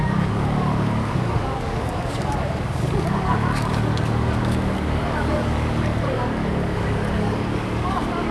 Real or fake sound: fake